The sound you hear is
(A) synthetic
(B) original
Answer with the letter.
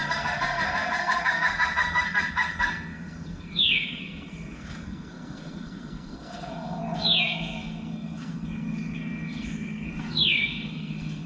A